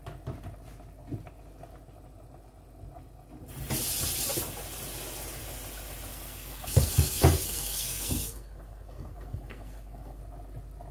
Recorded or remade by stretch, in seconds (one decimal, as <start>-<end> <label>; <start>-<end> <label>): 0.0-6.1 recorded; 6.1-10.2 remade; 10.2-10.9 recorded